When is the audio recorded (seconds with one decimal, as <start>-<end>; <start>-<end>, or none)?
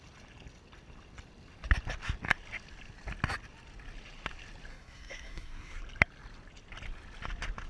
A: 0.0-4.7; 5.8-7.7